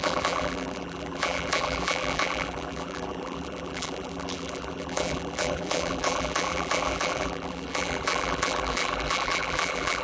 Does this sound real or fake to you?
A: fake